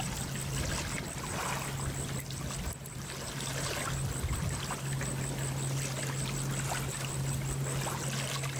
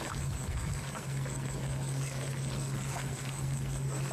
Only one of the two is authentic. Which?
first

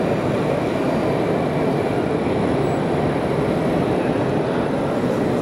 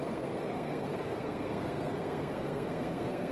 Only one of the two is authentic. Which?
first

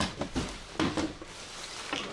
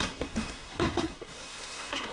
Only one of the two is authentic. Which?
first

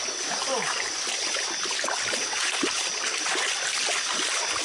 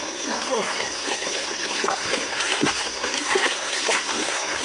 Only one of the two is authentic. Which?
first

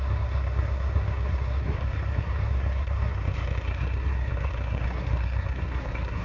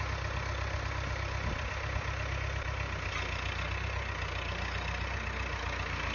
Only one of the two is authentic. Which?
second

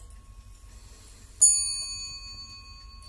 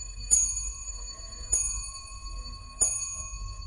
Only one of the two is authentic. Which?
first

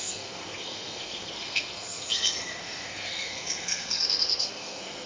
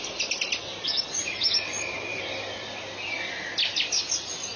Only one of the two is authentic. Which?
second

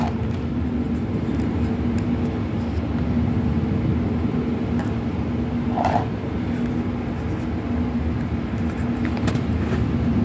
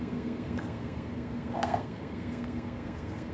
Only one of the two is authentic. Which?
first